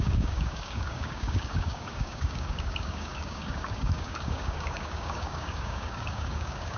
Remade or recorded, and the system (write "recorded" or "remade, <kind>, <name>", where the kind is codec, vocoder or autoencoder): remade, codec, DAC